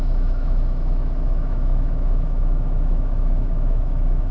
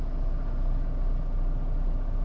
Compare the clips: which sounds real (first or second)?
second